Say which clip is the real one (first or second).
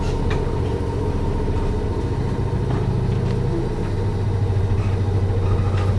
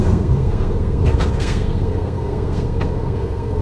first